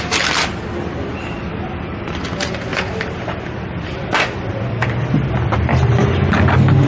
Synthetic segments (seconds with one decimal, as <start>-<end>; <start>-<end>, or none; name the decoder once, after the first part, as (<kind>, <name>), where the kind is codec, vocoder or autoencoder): none